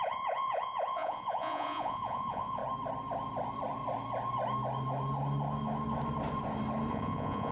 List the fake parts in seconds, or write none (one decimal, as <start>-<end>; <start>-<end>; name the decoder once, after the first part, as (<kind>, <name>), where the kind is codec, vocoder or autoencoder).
0.0-2.6 (vocoder, Vocos); 6.9-7.5